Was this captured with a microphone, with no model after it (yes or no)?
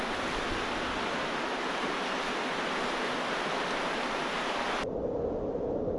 yes